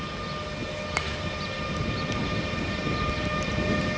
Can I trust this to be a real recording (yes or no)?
yes